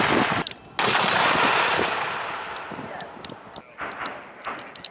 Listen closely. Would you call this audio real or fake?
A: real